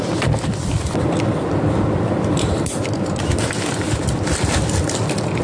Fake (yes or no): yes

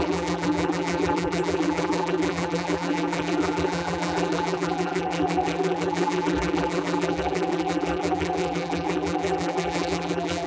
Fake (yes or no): yes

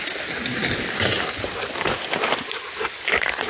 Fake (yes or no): yes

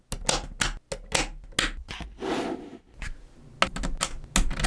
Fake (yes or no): no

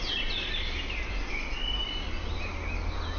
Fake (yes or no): no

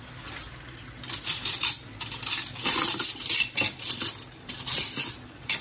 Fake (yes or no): no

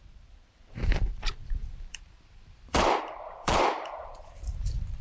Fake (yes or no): yes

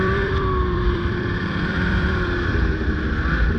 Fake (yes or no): yes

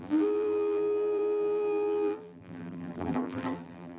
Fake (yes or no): yes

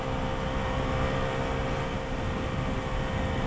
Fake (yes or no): no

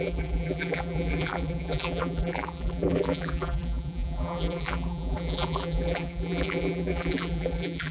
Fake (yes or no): yes